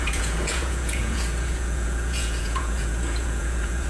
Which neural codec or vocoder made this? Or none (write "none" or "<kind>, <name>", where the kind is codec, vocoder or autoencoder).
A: vocoder, Vocos